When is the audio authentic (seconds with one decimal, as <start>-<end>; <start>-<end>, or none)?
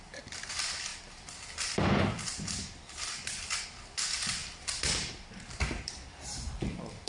0.0-0.9; 3.6-4.4